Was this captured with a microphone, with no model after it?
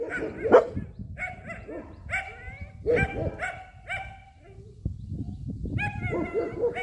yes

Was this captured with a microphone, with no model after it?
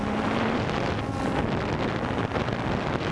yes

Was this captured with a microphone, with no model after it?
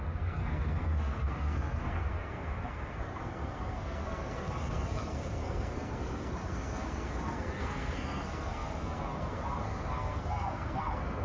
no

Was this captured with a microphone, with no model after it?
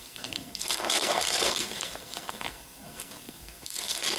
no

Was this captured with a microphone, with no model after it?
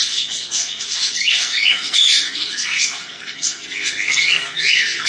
no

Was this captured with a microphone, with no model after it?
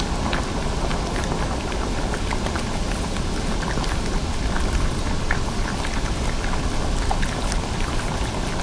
yes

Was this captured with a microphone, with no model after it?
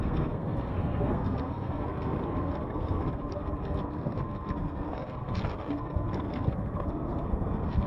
no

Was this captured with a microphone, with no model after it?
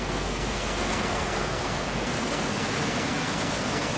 no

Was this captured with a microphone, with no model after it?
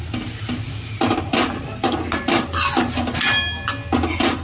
yes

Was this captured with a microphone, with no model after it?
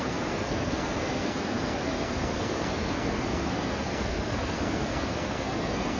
no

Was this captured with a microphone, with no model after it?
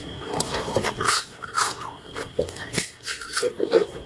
no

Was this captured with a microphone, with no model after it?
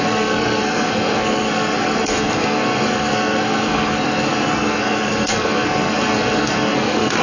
no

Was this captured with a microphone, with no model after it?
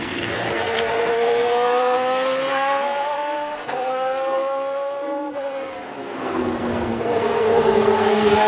no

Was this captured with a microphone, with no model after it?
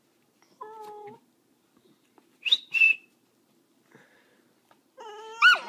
yes